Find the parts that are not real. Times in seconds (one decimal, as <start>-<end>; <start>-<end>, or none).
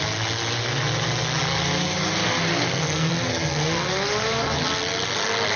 2.5-3.1